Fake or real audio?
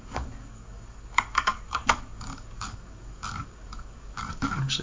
fake